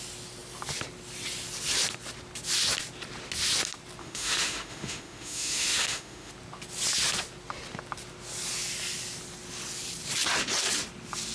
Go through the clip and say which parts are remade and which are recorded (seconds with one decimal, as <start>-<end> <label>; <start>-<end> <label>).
0.0-4.0 recorded; 4.0-6.3 remade; 6.3-11.3 recorded